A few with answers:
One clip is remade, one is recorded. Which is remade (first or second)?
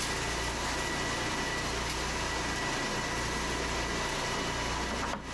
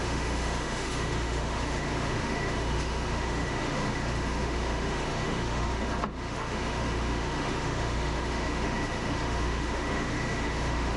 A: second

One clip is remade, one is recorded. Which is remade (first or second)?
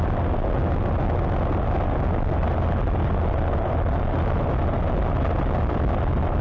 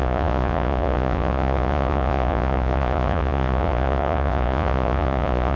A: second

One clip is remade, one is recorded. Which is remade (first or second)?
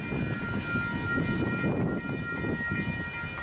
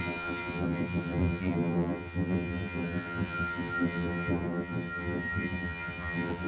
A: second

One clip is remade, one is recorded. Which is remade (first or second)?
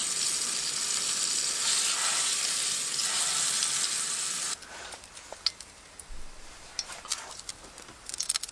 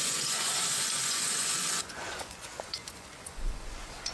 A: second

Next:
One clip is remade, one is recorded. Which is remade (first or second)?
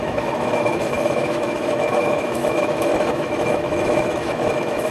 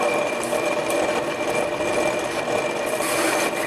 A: first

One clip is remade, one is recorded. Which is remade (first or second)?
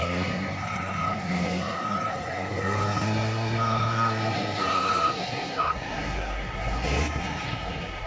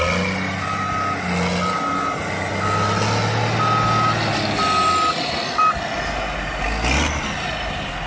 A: first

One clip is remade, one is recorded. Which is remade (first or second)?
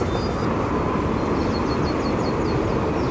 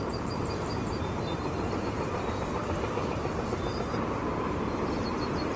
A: second